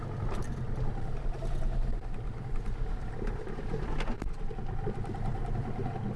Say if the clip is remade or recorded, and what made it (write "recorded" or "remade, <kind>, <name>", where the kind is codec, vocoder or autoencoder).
recorded